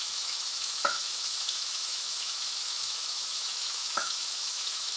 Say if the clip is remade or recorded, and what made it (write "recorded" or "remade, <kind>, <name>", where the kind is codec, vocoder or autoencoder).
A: remade, autoencoder, DAC-VAE